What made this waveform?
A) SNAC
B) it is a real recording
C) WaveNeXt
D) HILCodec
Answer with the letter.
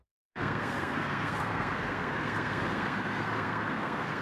A